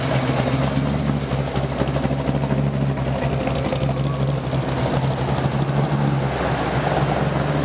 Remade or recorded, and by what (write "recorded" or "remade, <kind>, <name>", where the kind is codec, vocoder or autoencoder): recorded